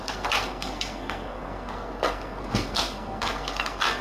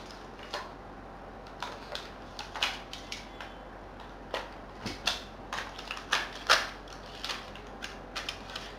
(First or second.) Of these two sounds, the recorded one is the second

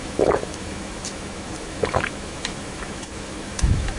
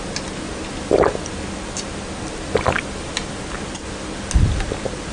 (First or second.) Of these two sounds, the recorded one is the second